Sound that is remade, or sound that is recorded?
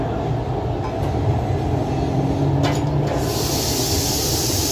recorded